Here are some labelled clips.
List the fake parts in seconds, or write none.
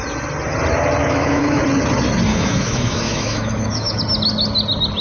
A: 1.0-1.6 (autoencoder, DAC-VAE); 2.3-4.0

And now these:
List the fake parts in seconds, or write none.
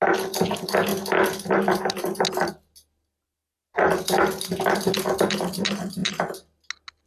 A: none